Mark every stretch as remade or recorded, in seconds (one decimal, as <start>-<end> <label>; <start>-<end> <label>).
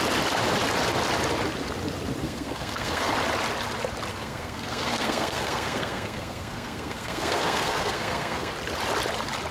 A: 0.0-2.2 recorded; 2.2-3.1 remade; 3.1-4.1 recorded; 4.1-8.5 remade; 8.5-9.5 recorded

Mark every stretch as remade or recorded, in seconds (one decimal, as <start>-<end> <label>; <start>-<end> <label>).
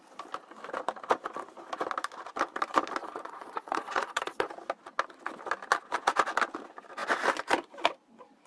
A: 0.0-3.0 recorded; 3.0-4.5 remade; 4.5-8.5 recorded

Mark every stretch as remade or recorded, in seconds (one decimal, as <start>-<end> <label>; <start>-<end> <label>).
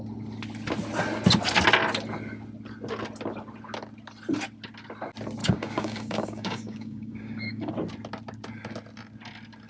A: 0.0-5.4 recorded; 5.4-7.7 remade; 7.7-9.7 recorded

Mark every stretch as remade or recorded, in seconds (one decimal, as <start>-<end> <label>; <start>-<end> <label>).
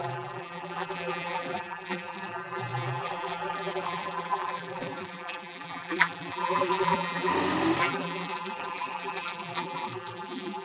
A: 0.0-7.3 remade; 7.3-7.8 recorded; 7.8-10.6 remade